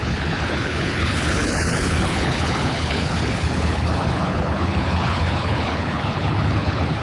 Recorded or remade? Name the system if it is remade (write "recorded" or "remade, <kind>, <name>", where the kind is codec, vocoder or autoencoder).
remade, codec, HILCodec